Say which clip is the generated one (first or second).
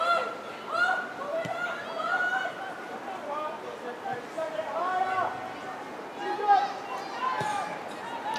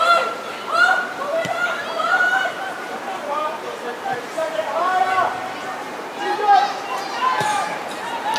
second